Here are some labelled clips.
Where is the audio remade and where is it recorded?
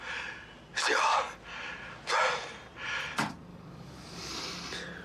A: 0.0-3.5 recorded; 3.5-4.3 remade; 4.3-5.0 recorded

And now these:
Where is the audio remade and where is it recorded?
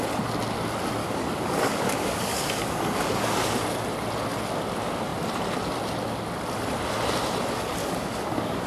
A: 0.0-1.0 recorded; 1.0-3.5 remade; 3.5-7.8 recorded; 7.8-8.7 remade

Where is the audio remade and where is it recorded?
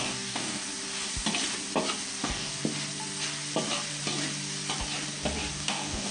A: 0.0-0.6 remade; 0.6-2.2 recorded; 2.2-2.6 remade; 2.6-5.5 recorded; 5.5-6.1 remade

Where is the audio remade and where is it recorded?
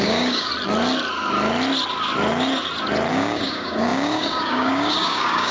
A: 0.0-0.5 remade; 0.5-3.1 recorded; 3.1-5.5 remade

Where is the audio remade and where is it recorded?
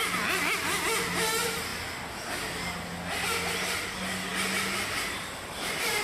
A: 0.0-6.0 recorded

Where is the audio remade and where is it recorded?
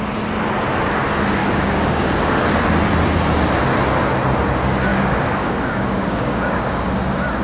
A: 0.0-1.4 recorded; 1.4-2.3 remade; 2.3-4.9 recorded; 4.9-6.8 remade; 6.8-7.4 recorded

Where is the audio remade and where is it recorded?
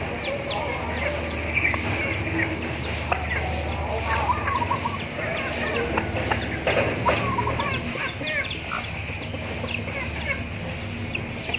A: 0.0-11.6 recorded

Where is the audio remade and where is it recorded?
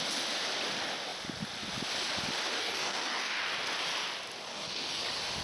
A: 0.0-2.6 recorded; 2.6-3.4 remade; 3.4-4.5 recorded; 4.5-5.0 remade; 5.0-5.4 recorded